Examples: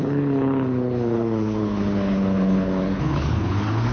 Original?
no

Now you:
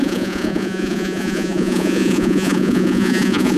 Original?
no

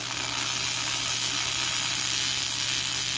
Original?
yes